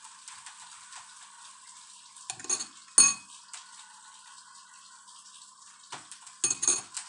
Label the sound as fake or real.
real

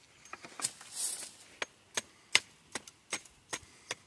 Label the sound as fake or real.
real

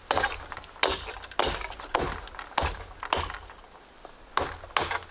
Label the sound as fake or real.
real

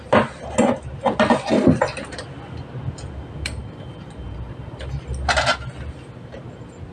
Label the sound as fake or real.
real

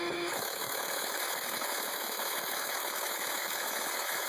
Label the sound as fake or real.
fake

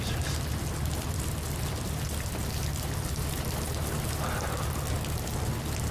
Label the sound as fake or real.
real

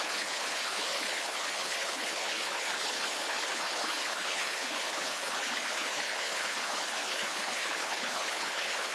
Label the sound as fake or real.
fake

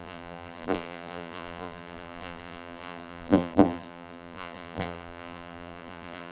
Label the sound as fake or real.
fake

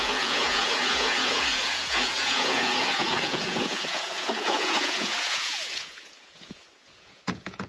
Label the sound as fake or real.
fake